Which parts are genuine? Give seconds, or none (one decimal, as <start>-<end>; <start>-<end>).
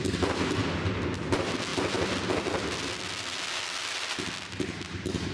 0.0-5.3